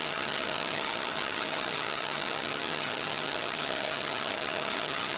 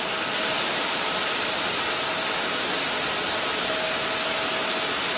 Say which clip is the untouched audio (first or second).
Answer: second